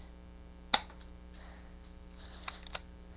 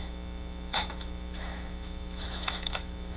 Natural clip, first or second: first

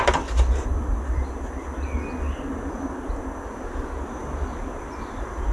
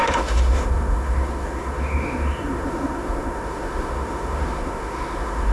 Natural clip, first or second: first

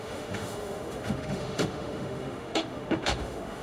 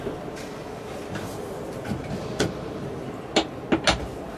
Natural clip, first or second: second